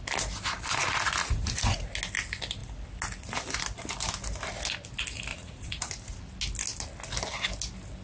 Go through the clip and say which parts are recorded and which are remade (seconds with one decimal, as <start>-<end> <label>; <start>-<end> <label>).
0.0-1.2 recorded; 1.2-1.9 remade; 1.9-5.3 recorded; 5.3-5.9 remade; 5.9-8.0 recorded